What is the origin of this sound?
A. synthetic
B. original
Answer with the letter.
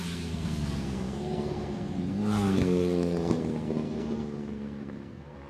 A